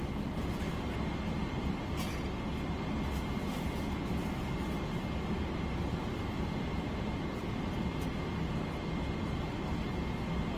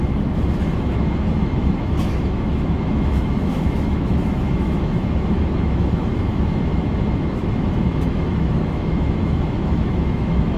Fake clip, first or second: second